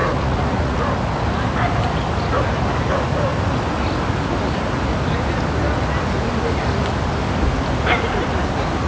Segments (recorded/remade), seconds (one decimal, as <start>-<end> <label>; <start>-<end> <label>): 0.0-0.8 remade; 0.8-8.9 recorded